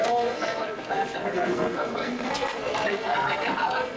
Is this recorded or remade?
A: remade